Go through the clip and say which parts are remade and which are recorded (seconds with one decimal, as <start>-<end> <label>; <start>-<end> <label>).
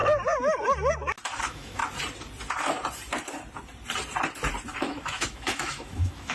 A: 0.0-1.4 recorded; 1.4-1.8 remade; 1.8-4.8 recorded; 4.8-6.3 remade